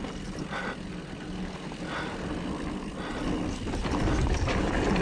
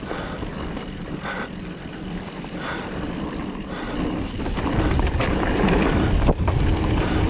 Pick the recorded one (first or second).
first